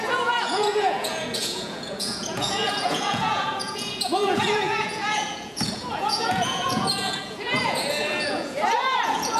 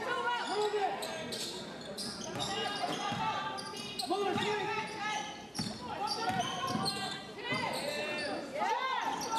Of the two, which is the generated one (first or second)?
first